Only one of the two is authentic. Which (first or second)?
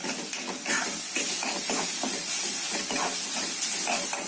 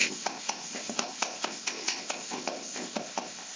first